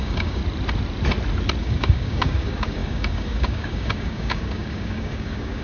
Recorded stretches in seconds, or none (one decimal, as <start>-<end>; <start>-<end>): 0.4-1.6